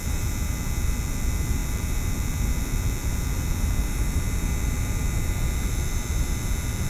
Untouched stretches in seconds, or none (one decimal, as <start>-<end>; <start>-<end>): none